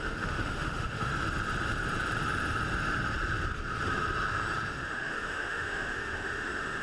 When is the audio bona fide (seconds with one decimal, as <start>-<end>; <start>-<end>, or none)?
1.1-4.7